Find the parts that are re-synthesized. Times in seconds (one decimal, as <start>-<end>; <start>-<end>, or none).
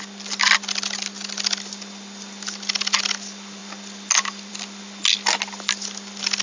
none